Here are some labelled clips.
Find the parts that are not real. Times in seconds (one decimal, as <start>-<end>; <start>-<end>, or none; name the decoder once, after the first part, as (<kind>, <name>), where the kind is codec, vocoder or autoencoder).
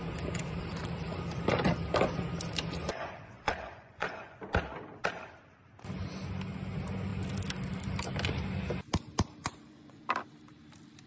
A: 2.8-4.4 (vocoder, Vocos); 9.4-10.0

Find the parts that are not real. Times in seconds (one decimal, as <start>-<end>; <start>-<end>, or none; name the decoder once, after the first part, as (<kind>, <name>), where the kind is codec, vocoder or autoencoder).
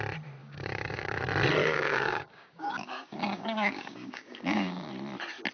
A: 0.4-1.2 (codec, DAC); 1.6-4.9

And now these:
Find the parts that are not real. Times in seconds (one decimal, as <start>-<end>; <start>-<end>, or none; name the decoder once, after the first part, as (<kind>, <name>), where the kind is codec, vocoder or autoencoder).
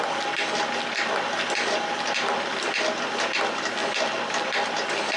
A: none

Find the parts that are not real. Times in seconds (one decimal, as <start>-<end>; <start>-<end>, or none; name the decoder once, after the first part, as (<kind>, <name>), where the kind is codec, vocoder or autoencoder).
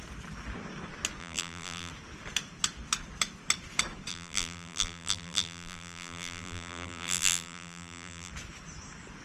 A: 1.2-1.9 (vocoder, BigVGAN v2); 4.1-8.3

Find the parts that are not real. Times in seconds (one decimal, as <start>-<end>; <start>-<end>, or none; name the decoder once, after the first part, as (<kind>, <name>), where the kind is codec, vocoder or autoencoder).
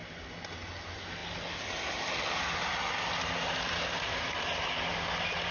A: none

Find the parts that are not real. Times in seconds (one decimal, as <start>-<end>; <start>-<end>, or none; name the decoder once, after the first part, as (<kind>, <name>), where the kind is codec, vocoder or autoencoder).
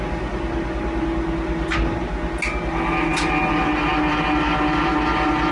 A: none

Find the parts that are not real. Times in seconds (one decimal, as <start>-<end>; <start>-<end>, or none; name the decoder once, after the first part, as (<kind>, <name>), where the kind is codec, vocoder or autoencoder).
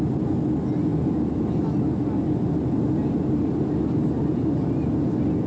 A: none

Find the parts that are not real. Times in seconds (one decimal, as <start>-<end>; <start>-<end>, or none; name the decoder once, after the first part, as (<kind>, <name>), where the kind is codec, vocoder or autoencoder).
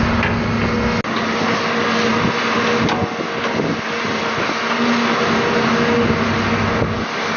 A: none